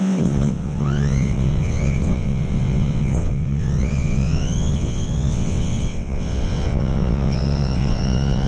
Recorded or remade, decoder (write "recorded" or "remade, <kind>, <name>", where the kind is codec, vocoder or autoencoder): remade, vocoder, WaveNeXt